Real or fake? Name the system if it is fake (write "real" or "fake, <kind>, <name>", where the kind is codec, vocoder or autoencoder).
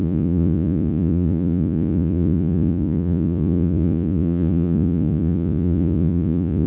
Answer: fake, vocoder, Vocos